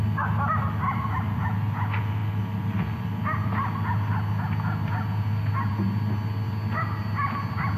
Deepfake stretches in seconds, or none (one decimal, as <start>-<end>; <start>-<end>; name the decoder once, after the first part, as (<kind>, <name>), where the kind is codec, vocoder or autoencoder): none